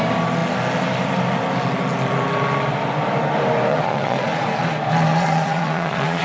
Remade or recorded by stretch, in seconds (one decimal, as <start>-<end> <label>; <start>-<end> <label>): 0.0-3.7 recorded; 3.7-4.3 remade; 4.3-5.1 recorded; 5.1-6.2 remade